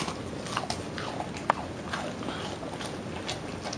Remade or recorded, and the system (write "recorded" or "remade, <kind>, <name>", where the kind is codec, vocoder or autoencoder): recorded